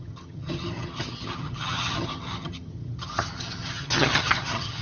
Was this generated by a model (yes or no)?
yes